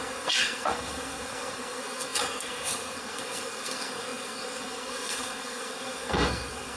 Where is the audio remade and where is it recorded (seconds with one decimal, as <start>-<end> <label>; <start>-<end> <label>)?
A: 0.0-6.8 remade